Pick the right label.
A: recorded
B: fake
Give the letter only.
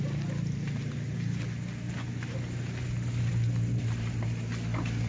A